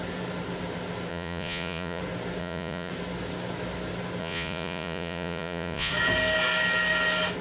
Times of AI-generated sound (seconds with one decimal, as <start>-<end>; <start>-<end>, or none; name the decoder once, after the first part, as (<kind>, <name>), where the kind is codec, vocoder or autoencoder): 1.1-2.0 (vocoder, Vocos); 2.4-2.9; 4.2-5.9